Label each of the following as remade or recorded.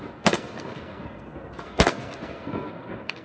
remade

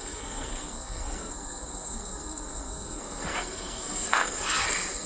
remade